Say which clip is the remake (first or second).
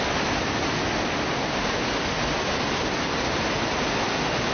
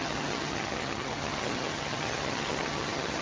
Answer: second